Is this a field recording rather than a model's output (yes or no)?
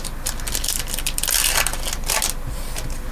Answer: yes